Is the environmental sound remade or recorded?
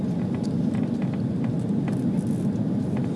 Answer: recorded